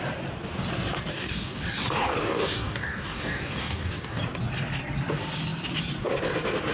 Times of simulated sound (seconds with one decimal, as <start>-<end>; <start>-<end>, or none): 1.1-1.6; 2.0-4.2